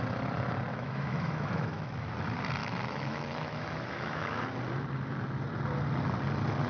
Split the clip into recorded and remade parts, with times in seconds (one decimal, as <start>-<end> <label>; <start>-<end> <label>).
0.0-0.7 recorded; 0.7-2.1 remade; 2.1-2.6 recorded; 2.6-4.4 remade; 4.4-6.7 recorded